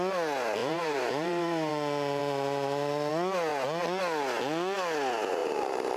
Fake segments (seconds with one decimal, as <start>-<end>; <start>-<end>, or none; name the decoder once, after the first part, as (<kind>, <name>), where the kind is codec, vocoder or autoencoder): 0.6-1.7 (vocoder, BigVGAN v2); 5.4-6.0